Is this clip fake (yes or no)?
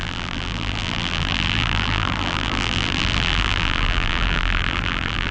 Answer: yes